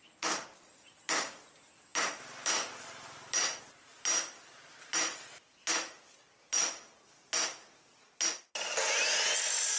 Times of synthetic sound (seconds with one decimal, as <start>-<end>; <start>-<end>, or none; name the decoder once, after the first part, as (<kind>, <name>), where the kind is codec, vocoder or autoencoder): none